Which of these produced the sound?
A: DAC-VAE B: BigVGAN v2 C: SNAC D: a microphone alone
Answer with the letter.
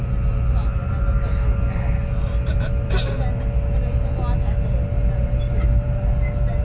D